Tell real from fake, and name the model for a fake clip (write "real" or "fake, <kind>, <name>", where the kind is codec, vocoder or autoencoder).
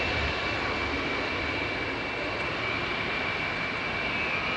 real